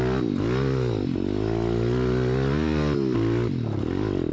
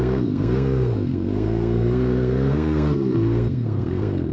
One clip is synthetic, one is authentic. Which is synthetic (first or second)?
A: second